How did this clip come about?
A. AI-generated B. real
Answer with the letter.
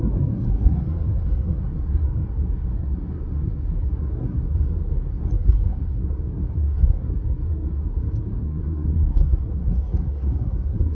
A